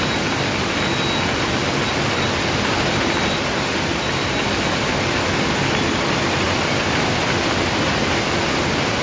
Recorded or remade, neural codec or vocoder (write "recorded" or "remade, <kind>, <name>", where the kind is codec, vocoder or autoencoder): recorded